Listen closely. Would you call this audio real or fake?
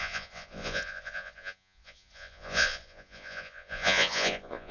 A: fake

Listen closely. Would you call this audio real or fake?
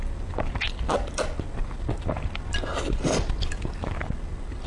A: real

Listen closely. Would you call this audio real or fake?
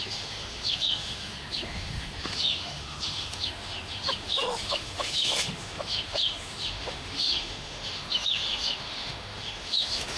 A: fake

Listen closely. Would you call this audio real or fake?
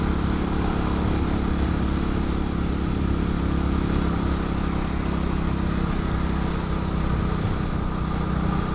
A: real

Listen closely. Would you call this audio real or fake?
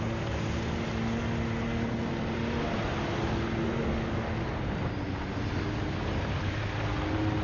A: real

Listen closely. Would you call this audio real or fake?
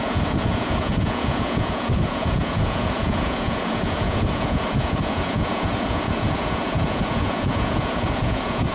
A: fake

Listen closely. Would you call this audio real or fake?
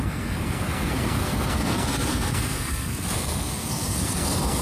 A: fake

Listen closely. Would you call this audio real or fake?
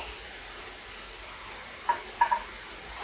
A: real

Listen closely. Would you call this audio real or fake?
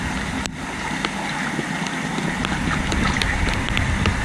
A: real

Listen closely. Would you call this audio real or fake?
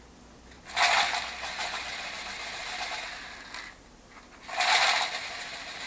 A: real